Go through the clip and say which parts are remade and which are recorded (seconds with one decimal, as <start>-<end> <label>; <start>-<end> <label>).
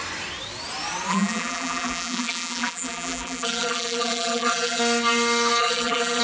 0.0-1.1 recorded; 1.1-4.8 remade; 4.8-5.6 recorded; 5.6-6.2 remade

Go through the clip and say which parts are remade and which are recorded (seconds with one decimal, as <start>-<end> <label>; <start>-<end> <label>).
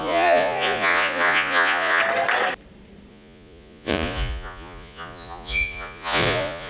0.0-2.0 remade; 2.0-3.1 recorded; 3.1-6.7 remade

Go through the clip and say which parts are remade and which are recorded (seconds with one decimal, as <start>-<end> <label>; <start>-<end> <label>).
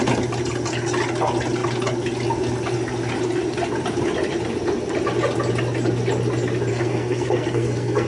0.0-6.7 recorded; 6.7-8.1 remade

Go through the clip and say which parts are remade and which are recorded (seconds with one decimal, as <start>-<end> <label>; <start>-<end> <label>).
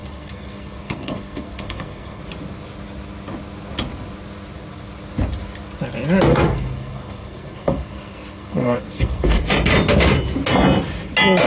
0.0-2.2 remade; 2.2-6.3 recorded; 6.3-9.4 remade; 9.4-11.5 recorded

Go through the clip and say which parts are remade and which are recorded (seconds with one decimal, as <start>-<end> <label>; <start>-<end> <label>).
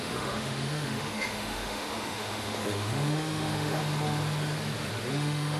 0.0-3.8 remade; 3.8-5.1 recorded; 5.1-5.6 remade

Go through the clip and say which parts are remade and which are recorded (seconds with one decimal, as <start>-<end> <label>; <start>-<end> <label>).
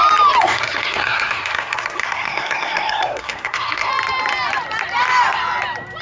0.0-0.4 recorded; 0.4-3.9 remade; 3.9-6.0 recorded